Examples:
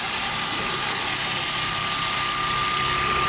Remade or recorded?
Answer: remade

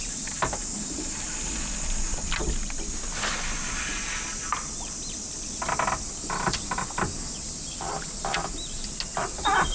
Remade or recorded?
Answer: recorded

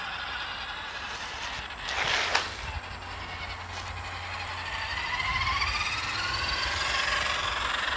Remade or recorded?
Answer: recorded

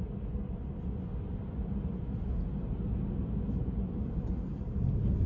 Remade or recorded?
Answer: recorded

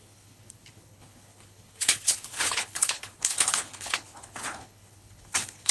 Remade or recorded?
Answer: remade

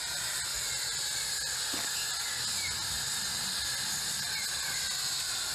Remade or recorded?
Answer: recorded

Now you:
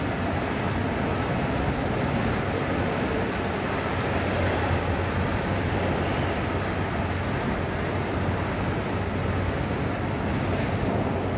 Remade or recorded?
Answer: recorded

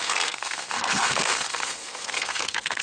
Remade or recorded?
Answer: remade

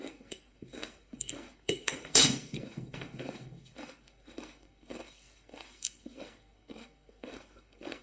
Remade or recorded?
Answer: remade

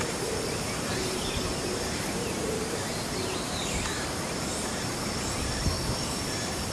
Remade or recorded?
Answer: remade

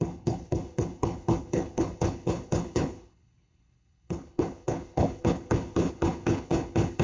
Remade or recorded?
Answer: remade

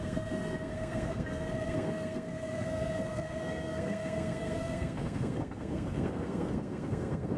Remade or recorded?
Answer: remade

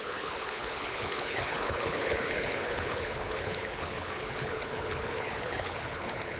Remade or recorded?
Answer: remade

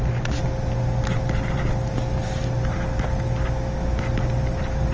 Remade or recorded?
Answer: recorded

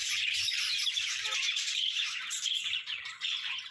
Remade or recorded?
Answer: remade